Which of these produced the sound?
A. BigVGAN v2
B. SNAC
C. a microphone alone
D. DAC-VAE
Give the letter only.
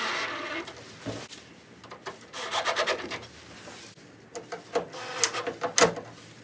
C